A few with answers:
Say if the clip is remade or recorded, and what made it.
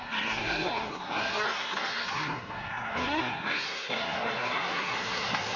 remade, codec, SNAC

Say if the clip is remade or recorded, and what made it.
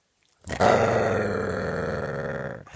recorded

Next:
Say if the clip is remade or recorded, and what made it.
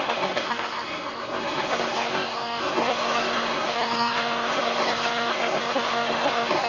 remade, codec, SNAC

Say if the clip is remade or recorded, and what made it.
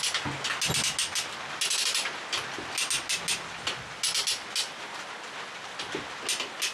recorded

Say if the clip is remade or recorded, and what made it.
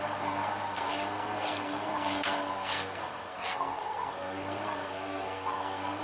remade, codec, SNAC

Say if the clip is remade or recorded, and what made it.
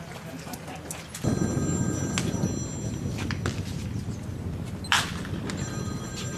recorded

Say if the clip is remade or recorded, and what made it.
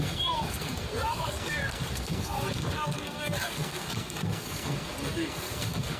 remade, codec, SNAC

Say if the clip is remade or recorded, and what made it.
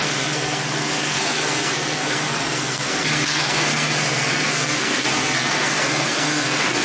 remade, codec, SNAC